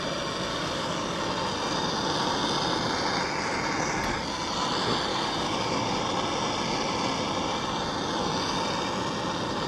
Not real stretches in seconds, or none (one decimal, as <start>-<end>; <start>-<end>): 0.5-1.2; 5.1-6.0